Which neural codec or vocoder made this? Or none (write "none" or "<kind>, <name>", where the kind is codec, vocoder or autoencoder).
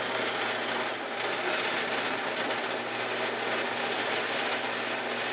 none